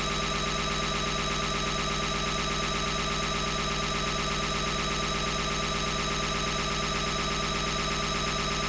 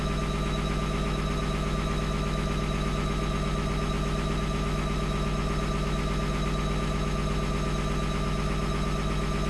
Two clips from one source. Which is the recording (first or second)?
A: first